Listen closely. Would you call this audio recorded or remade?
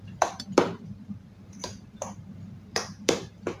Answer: remade